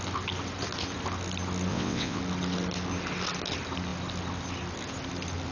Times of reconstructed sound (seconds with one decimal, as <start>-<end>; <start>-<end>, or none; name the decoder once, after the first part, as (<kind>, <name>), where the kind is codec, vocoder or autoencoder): 1.7-2.2 (vocoder, WaveNeXt)